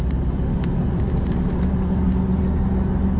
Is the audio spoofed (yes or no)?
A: no